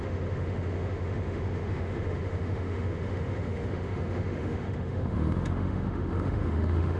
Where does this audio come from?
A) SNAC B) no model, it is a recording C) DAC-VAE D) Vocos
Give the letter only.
C